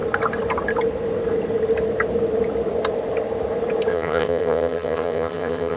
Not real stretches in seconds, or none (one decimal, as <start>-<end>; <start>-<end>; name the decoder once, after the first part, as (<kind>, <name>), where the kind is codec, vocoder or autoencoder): 3.9-5.8 (vocoder, HiFi-GAN)